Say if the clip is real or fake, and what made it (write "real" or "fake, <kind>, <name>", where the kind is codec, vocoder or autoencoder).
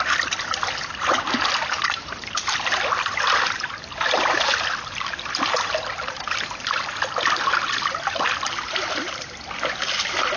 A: real